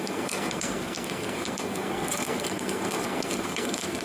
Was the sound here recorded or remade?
remade